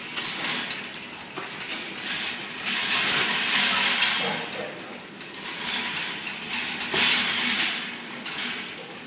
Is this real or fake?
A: real